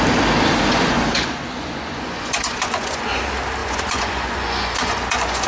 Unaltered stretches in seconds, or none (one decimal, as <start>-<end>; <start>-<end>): 0.0-0.7; 3.2-3.6